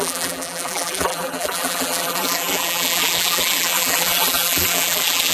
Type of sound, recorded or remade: remade